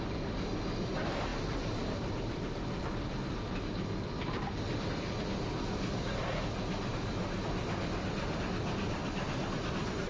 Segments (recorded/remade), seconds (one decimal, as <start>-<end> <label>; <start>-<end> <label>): 0.0-10.1 recorded